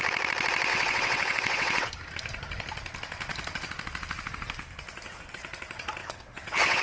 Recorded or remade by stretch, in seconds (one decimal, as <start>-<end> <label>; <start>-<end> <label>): 0.0-0.7 recorded; 0.7-1.9 remade; 1.9-6.0 recorded; 6.0-6.8 remade